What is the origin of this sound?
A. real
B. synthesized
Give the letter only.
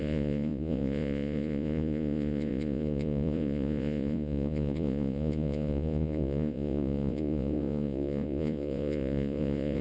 B